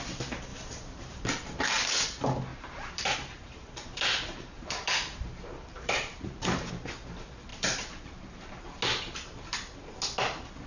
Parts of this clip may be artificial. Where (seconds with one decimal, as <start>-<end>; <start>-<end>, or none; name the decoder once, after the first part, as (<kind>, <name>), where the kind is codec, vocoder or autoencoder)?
0.5-1.6 (vocoder, BigVGAN v2); 2.5-6.6; 7.5-8.5